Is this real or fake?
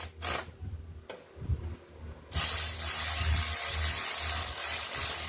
real